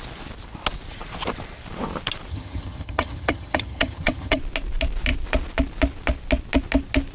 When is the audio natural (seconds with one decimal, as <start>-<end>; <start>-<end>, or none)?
0.0-2.3; 4.4-7.1